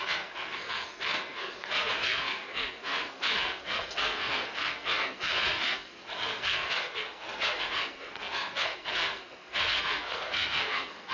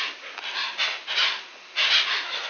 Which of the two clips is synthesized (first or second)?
first